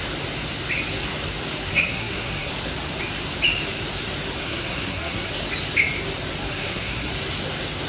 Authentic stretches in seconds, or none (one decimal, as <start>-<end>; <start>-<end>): 0.0-1.7; 2.5-4.4; 5.3-6.5; 7.1-7.9